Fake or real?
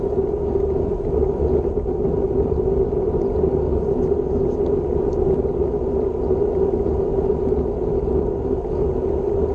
real